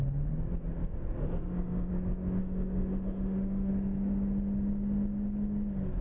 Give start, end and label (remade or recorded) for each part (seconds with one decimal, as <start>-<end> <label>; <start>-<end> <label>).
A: 0.0-1.2 recorded; 1.2-1.9 remade; 1.9-2.4 recorded; 2.4-3.7 remade; 3.7-6.0 recorded